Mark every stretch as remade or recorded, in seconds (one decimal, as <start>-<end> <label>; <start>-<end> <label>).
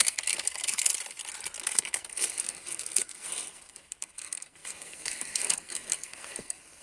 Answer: 0.0-0.9 remade; 0.9-1.6 recorded; 1.6-6.8 remade